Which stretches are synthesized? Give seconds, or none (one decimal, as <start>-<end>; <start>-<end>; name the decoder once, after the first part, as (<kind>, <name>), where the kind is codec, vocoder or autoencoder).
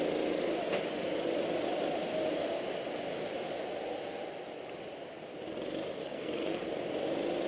6.0-6.6 (codec, SNAC)